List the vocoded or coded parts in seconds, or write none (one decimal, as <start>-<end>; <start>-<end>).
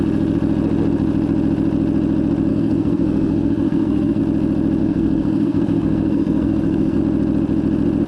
2.5-4.2; 4.8-7.0